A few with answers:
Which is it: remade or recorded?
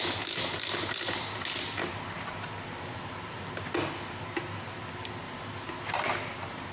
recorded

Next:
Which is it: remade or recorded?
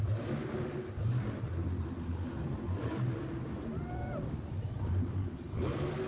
recorded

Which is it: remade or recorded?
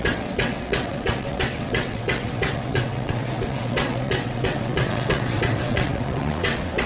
remade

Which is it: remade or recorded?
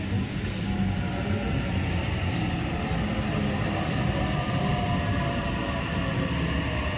recorded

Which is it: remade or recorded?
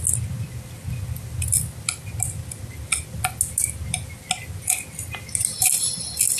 recorded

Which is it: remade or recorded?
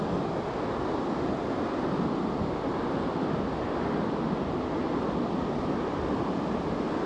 recorded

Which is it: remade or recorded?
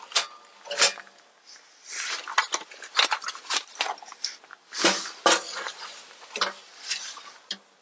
recorded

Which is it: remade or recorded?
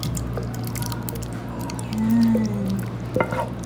recorded